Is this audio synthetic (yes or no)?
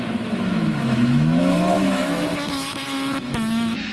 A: yes